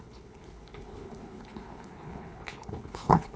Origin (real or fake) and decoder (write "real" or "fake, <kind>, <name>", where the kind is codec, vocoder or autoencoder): fake, codec, HILCodec